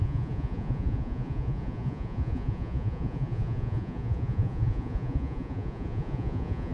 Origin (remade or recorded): remade